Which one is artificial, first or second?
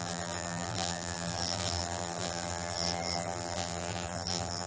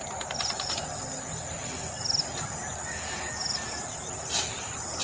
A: first